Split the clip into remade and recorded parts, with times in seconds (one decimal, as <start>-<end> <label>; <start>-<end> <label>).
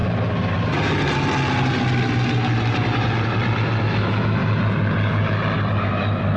0.0-3.8 recorded; 3.8-4.4 remade; 4.4-5.8 recorded; 5.8-6.4 remade